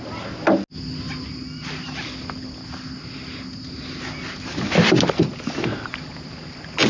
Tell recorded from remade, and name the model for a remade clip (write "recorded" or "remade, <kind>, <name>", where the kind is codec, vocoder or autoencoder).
recorded